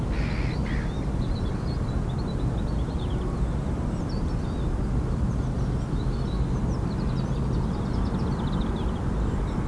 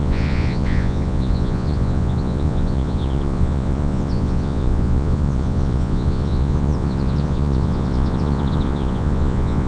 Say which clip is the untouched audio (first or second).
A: first